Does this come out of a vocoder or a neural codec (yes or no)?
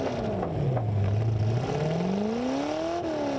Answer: no